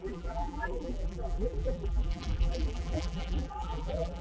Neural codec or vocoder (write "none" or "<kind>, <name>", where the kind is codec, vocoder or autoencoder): vocoder, BigVGAN v2